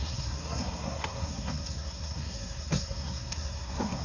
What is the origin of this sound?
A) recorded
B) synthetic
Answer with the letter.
B